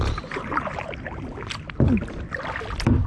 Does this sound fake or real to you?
real